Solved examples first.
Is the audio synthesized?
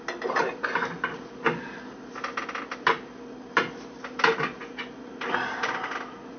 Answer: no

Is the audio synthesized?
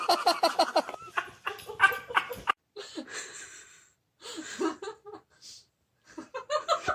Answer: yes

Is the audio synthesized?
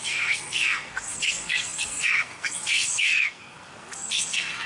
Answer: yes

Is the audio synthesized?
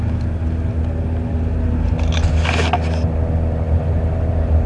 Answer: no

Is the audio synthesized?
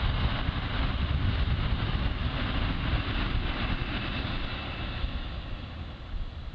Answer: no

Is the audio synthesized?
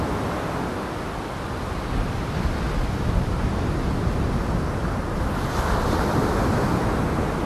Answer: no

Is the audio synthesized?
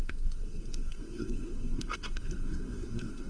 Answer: yes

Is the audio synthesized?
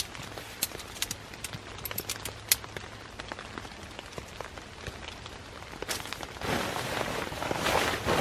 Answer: no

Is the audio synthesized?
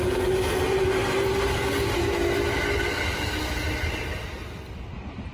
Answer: no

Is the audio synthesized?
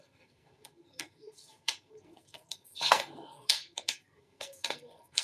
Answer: yes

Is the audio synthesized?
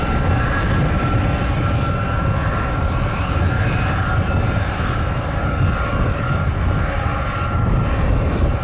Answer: no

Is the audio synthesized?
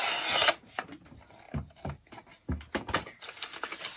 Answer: no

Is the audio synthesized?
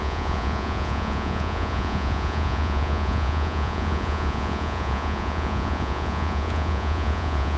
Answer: yes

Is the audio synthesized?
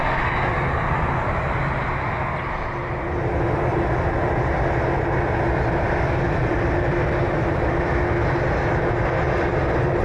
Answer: no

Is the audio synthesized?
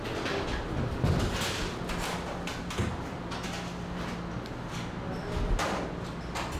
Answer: no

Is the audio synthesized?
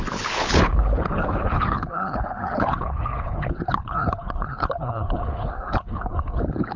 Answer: yes